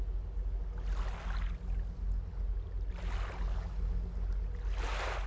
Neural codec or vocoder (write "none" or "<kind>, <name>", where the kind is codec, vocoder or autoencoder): none